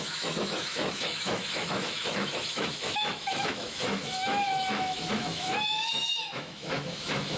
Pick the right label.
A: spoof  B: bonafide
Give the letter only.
A